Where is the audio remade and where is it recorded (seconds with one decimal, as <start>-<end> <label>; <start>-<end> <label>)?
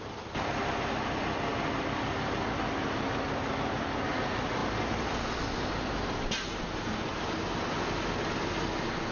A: 0.0-9.1 recorded